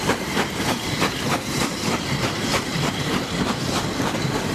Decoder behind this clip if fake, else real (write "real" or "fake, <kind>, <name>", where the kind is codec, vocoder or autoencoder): fake, vocoder, BigVGAN v2